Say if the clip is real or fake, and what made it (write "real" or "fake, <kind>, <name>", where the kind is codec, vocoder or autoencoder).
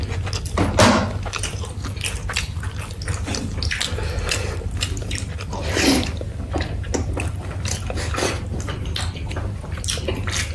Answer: real